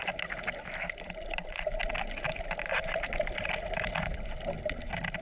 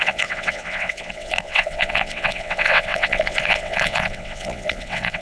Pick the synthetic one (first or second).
second